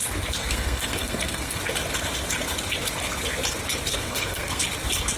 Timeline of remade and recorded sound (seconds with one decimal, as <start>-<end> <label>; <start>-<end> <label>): 0.0-0.4 recorded; 0.4-1.6 remade; 1.6-3.9 recorded; 3.9-4.6 remade; 4.6-5.2 recorded